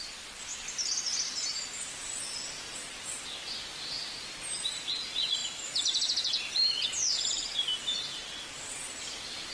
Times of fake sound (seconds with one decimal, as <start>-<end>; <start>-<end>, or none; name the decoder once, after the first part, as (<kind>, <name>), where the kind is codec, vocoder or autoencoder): 0.0-0.5 (vocoder, BigVGAN v2); 4.2-5.4; 9.0-9.5